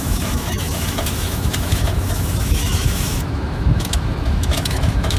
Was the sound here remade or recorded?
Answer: remade